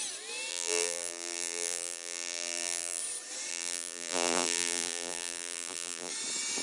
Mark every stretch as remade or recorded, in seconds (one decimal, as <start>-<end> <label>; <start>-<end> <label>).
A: 0.0-0.5 recorded; 0.5-3.0 remade; 3.0-3.5 recorded; 3.5-6.1 remade; 6.1-6.6 recorded